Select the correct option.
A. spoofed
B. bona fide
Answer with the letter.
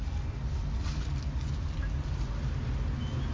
B